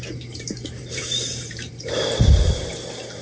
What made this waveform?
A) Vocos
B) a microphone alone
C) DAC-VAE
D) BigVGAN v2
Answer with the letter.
D